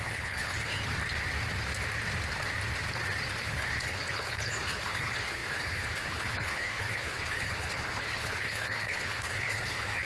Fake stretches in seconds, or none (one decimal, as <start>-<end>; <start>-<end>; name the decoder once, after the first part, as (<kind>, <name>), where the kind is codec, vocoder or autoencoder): 0.0-0.8 (codec, HILCodec); 3.4-10.1